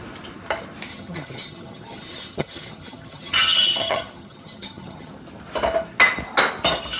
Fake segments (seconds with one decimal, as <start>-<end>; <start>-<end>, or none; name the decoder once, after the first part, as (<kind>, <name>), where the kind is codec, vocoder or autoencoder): 0.9-5.1 (vocoder, HiFi-GAN)